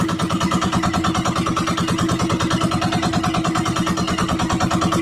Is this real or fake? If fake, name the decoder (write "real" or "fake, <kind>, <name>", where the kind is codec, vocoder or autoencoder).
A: real